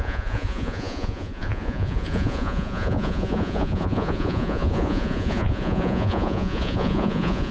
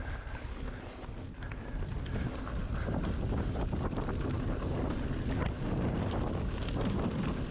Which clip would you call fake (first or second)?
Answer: first